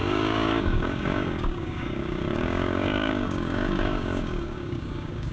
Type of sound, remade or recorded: remade